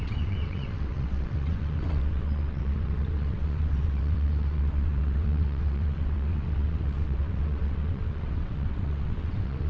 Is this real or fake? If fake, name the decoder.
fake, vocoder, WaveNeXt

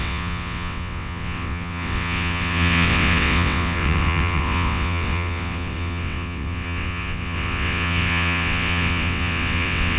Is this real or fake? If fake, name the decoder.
fake, vocoder, WaveNeXt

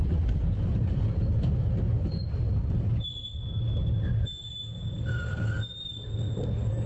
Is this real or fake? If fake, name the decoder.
real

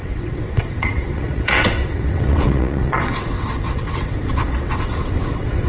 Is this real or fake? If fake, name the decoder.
fake, vocoder, WaveNeXt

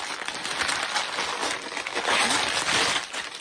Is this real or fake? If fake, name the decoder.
real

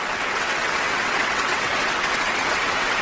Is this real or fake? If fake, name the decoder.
fake, vocoder, WaveNeXt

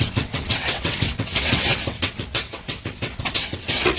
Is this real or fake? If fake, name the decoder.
fake, vocoder, WaveNeXt